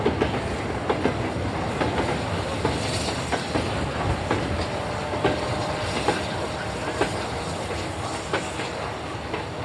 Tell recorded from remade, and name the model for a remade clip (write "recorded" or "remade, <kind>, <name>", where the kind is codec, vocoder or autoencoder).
recorded